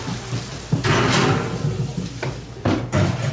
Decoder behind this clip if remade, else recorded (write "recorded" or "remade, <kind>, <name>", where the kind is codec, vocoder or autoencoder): recorded